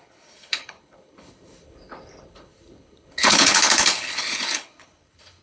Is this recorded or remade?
remade